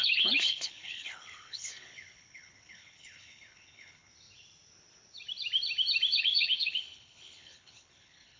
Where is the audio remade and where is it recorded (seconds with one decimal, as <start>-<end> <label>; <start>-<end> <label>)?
0.0-4.1 remade; 4.1-6.2 recorded; 6.2-8.4 remade